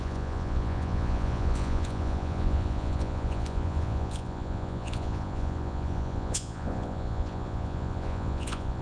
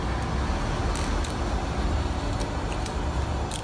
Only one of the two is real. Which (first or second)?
second